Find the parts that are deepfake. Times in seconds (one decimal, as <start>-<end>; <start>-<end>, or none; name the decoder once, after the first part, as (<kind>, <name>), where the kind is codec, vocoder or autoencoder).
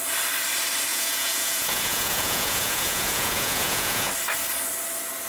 0.9-4.1 (vocoder, Vocos)